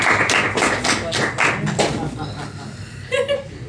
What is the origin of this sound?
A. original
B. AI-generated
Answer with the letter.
A